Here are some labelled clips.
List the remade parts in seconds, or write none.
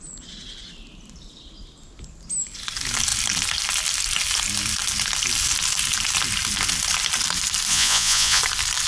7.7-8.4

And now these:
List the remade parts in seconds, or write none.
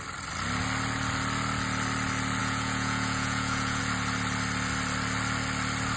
2.4-3.8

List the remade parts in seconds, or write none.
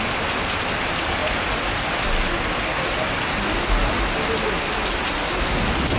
none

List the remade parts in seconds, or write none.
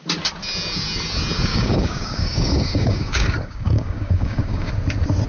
1.5-4.7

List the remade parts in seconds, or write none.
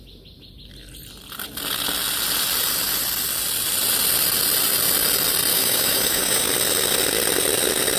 5.5-6.5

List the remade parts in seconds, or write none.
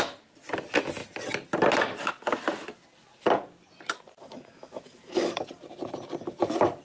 4.2-5.4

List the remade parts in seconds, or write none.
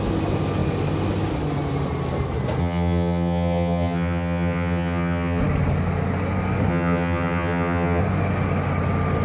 2.6-5.4; 6.7-8.0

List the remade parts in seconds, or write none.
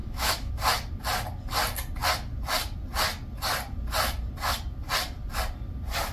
0.0-0.5